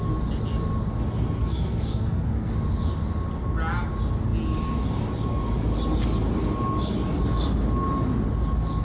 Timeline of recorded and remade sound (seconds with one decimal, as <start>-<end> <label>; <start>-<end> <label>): 0.0-1.5 recorded; 1.5-2.5 remade; 2.5-8.8 recorded